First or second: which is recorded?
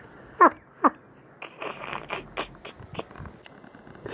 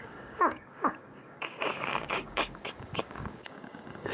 first